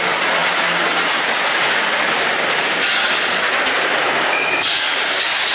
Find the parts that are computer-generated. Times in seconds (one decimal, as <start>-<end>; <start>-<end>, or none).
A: 4.4-5.5